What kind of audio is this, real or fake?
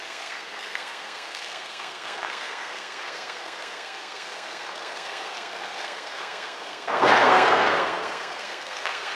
fake